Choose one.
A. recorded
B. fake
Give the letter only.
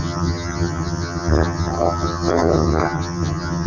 B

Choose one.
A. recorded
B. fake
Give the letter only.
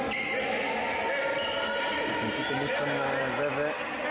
A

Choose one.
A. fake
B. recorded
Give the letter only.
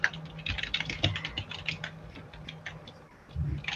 B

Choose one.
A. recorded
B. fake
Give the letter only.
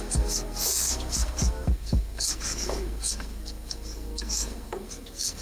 B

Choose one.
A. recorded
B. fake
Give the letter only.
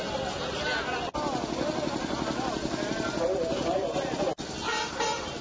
A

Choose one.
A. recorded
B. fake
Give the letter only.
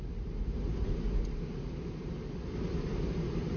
A